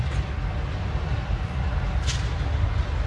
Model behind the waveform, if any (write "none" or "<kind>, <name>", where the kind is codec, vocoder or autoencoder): none